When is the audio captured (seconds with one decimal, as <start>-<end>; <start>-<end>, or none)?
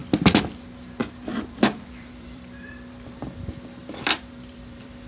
0.0-1.3; 3.2-3.8